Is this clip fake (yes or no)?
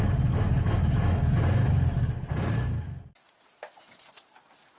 no